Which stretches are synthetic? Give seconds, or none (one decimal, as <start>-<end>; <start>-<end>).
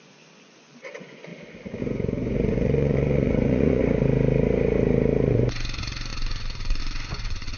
0.0-1.3; 1.8-3.8; 5.3-7.6